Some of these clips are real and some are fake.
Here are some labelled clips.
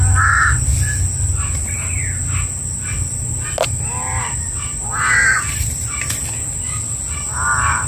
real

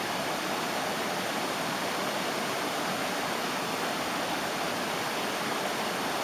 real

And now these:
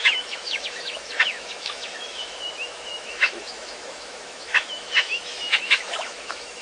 fake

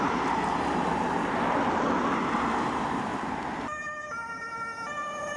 real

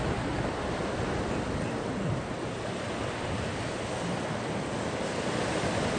real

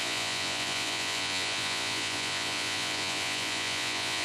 fake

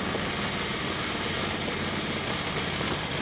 real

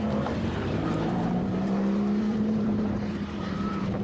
fake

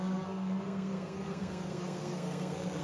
fake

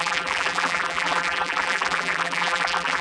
fake